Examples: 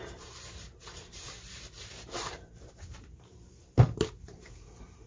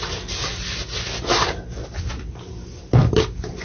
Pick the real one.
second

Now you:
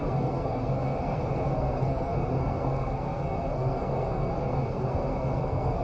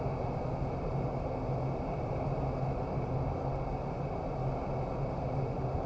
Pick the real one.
second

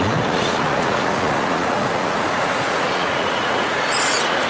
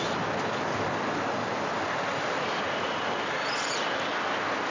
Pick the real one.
second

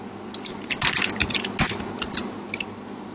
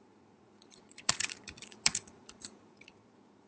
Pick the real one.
first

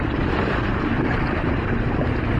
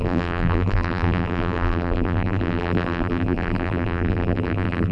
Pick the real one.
first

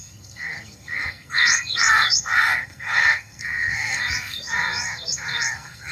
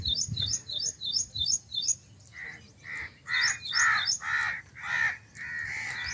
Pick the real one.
second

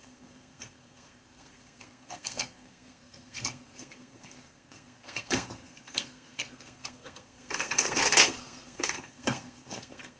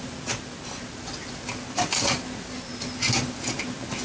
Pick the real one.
second